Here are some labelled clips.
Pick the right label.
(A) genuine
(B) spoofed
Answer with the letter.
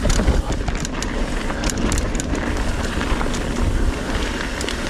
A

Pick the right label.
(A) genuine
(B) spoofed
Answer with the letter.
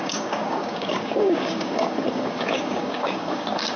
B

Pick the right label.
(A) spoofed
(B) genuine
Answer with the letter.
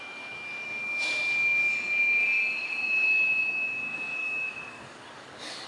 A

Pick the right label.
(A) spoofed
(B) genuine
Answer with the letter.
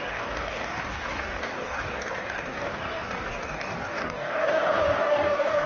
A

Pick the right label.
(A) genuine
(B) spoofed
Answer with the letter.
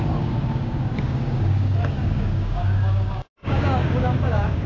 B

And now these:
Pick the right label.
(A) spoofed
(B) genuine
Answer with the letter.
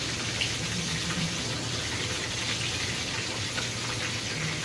B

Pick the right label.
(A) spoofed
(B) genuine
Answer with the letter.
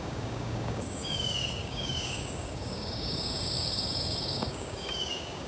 A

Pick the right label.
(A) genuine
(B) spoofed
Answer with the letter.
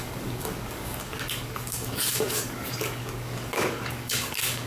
B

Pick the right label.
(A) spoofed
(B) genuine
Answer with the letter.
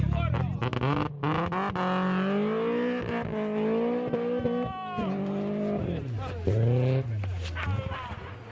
B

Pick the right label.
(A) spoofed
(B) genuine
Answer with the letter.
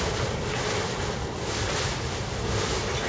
B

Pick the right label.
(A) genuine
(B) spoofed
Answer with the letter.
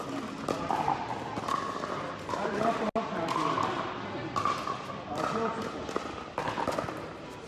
A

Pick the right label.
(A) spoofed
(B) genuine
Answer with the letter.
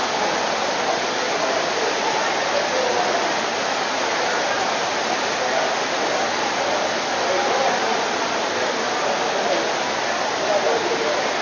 B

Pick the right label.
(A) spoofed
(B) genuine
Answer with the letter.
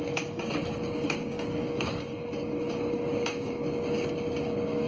A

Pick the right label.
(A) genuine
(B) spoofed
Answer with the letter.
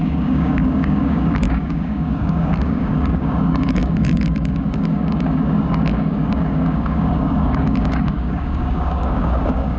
B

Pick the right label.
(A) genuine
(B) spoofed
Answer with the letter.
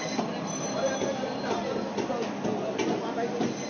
A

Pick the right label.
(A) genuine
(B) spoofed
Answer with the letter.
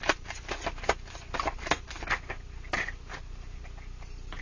A